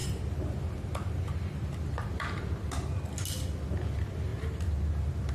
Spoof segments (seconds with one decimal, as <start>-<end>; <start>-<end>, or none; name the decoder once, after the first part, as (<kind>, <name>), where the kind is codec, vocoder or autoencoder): 0.0-0.6 (vocoder, BigVGAN v2)